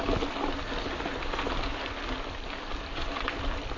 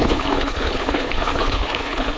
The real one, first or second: first